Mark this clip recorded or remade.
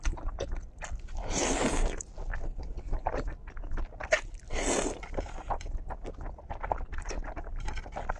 recorded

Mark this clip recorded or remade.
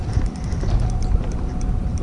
recorded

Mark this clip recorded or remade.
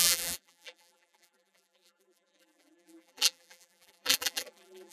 remade